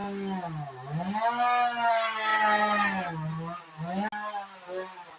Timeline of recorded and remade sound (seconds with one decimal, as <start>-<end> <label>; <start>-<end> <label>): 0.0-5.2 recorded